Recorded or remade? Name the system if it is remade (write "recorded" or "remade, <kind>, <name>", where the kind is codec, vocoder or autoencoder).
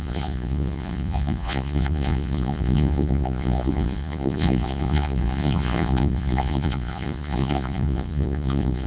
remade, vocoder, Vocos